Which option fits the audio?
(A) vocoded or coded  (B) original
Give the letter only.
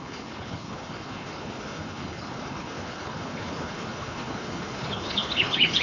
A